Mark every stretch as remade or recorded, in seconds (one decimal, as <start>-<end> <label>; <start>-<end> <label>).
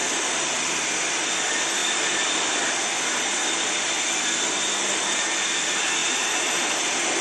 0.0-6.0 recorded; 6.0-6.8 remade; 6.8-7.2 recorded